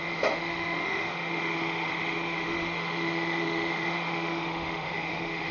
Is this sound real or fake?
fake